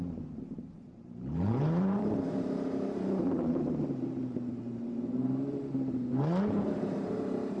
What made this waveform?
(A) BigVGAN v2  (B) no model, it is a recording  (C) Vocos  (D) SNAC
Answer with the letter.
A